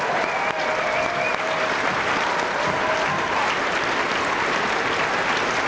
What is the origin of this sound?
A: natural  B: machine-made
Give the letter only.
A